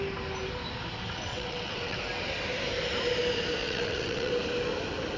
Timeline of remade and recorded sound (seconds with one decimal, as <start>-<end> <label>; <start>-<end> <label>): 0.0-1.3 recorded; 1.3-2.0 remade; 2.0-3.6 recorded; 3.6-4.3 remade; 4.3-5.2 recorded